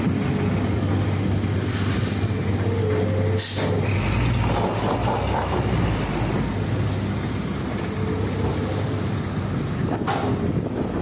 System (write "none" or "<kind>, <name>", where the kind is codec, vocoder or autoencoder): none